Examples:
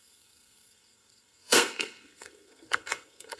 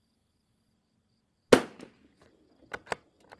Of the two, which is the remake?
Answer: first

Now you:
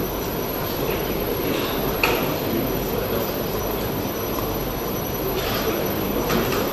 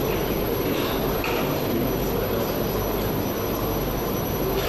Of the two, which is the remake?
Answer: first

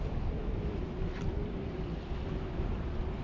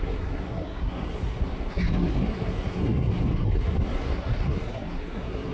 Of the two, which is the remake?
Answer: second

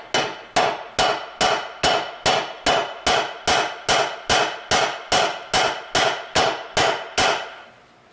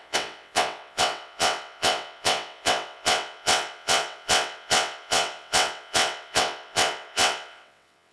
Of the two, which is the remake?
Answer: second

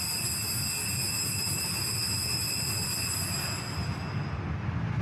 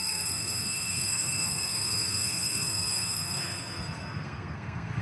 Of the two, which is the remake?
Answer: second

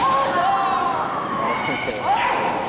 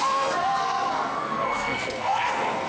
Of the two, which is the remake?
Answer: second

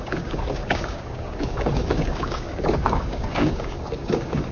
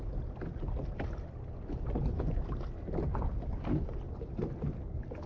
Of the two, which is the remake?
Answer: first